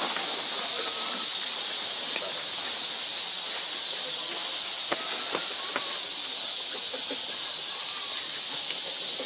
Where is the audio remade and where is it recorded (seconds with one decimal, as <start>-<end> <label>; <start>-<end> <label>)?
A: 0.0-9.3 recorded

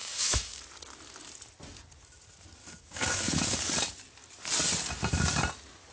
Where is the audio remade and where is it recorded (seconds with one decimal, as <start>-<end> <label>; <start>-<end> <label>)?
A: 0.0-0.6 remade; 0.6-2.6 recorded; 2.6-3.7 remade; 3.7-5.9 recorded

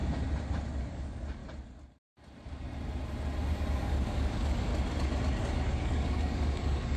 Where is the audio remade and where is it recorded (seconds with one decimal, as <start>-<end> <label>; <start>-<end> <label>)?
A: 0.0-0.8 recorded; 0.8-1.4 remade; 1.4-3.7 recorded; 3.7-4.7 remade; 4.7-5.4 recorded; 5.4-7.0 remade

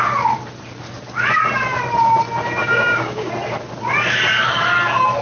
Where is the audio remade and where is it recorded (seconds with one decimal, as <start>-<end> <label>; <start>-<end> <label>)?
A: 0.0-2.6 recorded; 2.6-3.3 remade; 3.3-5.2 recorded